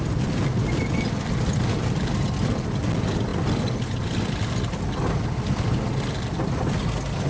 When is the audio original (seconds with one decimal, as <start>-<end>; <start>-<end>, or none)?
0.0-7.3